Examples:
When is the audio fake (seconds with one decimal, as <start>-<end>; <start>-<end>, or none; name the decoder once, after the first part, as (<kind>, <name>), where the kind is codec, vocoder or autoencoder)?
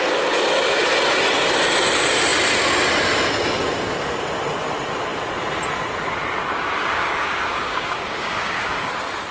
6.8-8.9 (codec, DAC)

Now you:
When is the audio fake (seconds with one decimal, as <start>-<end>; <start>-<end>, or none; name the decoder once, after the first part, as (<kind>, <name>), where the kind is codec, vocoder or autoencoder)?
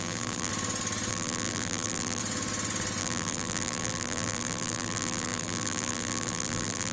0.0-0.5 (vocoder, BigVGAN v2); 1.1-2.2; 3.0-6.9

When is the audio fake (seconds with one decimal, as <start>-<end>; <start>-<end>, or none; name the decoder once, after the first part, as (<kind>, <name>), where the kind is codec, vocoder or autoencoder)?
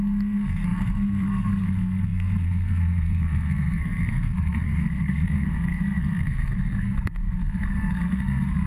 0.0-8.7 (codec, SNAC)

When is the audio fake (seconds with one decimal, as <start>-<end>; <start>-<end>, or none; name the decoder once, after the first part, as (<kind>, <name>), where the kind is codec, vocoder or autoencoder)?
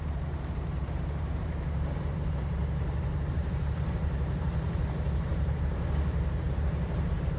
0.0-2.6 (vocoder, BigVGAN v2); 3.3-7.4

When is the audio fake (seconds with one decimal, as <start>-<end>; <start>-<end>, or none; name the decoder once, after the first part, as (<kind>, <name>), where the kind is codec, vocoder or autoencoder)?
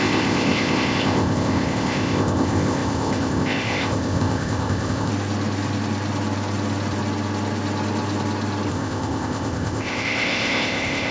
0.0-5.1 (codec, ZipCodec); 8.7-11.1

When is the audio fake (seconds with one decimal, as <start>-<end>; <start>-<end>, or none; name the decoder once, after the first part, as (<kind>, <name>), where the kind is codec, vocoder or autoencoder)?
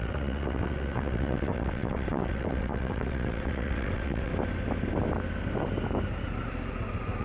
0.0-4.3 (vocoder, WaveNeXt)